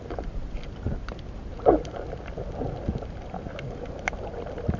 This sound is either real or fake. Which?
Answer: real